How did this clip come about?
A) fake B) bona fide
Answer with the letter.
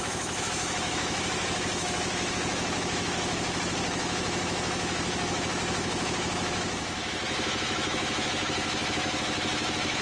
A